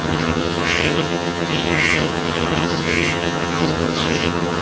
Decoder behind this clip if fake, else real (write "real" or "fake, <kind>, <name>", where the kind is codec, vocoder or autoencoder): fake, vocoder, HiFi-GAN